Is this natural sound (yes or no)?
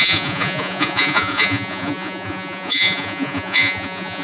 no